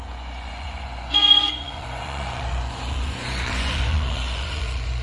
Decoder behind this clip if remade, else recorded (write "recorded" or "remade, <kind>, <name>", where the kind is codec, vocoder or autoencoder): remade, vocoder, Vocos